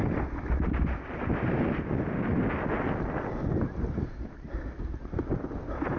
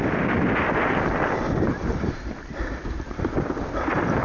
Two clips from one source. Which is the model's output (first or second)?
second